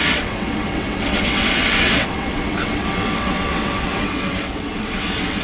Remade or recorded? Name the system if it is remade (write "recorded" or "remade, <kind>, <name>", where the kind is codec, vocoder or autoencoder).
remade, vocoder, WaveNeXt